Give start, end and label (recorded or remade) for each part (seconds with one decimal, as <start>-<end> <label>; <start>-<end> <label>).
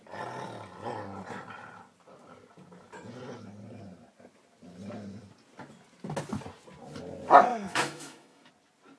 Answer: 0.0-7.5 recorded; 7.5-8.5 remade; 8.5-9.0 recorded